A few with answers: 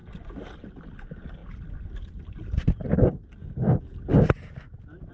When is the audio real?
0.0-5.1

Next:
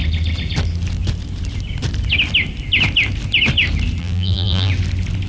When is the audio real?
0.0-4.0; 4.7-5.3

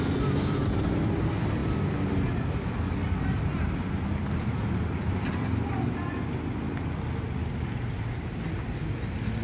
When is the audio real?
0.0-9.4

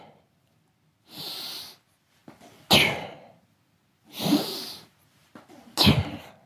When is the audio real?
0.0-6.5

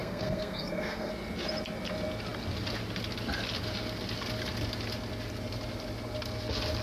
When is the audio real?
1.1-6.8

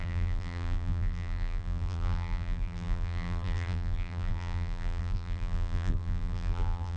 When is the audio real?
none

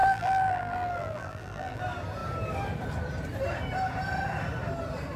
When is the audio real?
1.8-5.2